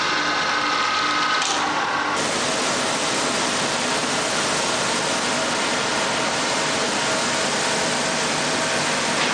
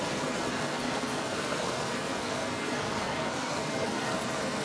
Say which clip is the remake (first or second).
second